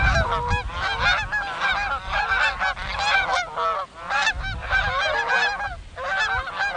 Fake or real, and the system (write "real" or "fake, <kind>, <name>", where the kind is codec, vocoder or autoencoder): real